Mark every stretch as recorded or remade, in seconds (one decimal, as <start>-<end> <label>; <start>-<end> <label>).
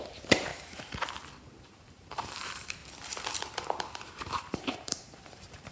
0.0-0.5 remade; 0.5-1.6 recorded; 1.6-2.8 remade; 2.8-3.4 recorded; 3.4-5.7 remade